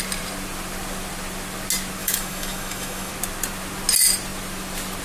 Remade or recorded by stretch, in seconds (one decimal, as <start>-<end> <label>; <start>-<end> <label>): 0.0-2.0 recorded; 2.0-3.1 remade; 3.1-5.0 recorded